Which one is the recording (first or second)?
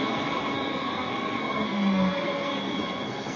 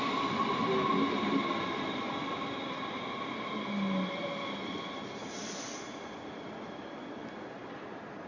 second